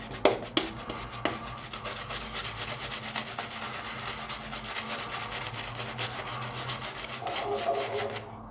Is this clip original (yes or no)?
yes